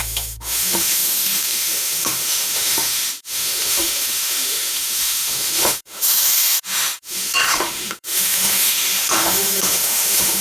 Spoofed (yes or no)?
yes